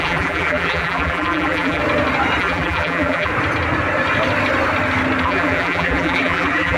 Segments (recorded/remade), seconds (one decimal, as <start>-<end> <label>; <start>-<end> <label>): 0.0-1.8 remade; 1.8-2.4 recorded; 2.4-3.3 remade; 3.3-5.2 recorded; 5.2-6.8 remade